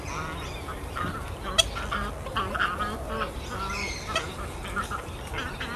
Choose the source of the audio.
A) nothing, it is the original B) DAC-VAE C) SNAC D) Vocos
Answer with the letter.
A